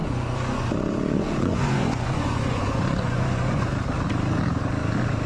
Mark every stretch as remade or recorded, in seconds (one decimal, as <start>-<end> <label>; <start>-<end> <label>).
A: 0.0-3.7 remade; 3.7-5.3 recorded